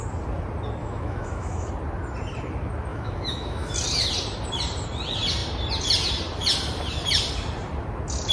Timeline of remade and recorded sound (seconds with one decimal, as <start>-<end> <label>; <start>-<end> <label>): 0.0-0.8 recorded; 0.8-1.7 remade; 1.7-2.9 recorded; 2.9-3.7 remade; 3.7-8.3 recorded